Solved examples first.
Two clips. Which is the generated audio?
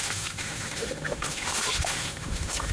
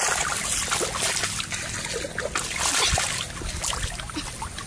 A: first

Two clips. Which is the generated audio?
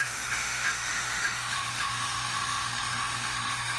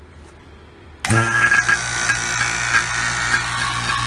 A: first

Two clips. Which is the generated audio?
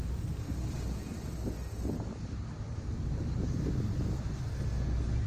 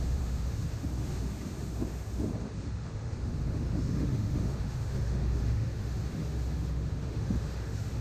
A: second